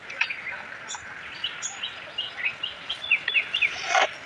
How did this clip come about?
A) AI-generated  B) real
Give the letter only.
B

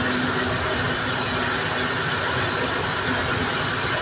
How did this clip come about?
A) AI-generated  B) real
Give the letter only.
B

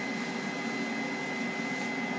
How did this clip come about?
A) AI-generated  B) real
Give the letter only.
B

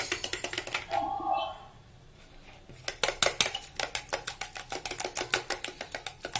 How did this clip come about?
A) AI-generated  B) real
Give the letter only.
B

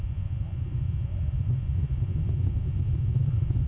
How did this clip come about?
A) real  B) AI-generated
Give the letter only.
B